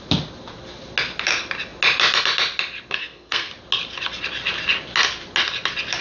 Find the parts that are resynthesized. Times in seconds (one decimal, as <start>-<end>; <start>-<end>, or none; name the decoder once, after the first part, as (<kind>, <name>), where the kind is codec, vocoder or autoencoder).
3.0-3.5 (codec, SNAC)